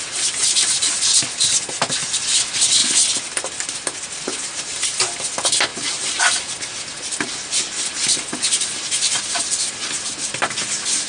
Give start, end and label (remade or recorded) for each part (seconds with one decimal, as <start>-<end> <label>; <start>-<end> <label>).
0.0-11.1 recorded